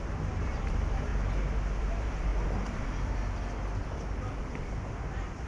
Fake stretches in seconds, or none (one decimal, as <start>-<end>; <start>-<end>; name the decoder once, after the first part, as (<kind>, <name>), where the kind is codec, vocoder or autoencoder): 0.0-1.1 (vocoder, BigVGAN v2); 1.8-2.3; 4.3-5.5

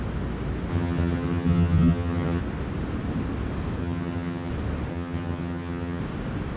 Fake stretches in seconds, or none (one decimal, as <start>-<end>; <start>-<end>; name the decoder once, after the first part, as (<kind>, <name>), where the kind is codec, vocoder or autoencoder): 0.7-2.4 (vocoder, HiFi-GAN); 3.8-4.5; 4.9-6.0

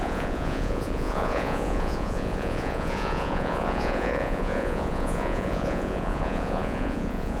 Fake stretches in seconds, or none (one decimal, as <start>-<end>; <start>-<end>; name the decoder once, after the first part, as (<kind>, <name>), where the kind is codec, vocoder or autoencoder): 0.0-7.4 (vocoder, Vocos)

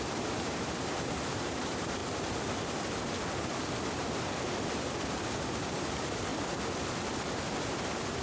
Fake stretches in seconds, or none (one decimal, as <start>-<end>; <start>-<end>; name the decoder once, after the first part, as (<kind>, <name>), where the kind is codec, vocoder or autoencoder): 0.0-2.0 (vocoder, BigVGAN v2); 5.7-6.3

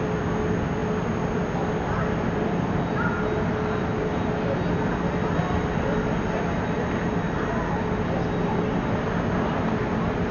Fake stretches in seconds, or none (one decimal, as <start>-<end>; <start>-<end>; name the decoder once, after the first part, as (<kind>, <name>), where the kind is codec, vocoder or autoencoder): none